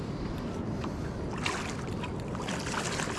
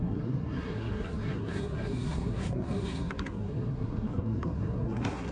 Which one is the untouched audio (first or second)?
first